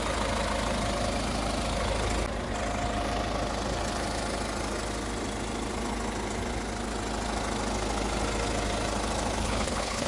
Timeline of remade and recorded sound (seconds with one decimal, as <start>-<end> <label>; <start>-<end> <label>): 0.0-9.4 recorded; 9.4-10.1 remade